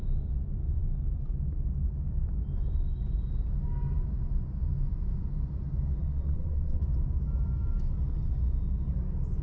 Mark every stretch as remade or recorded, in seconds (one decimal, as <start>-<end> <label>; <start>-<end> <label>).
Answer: 0.0-6.0 recorded; 6.0-6.8 remade; 6.8-9.4 recorded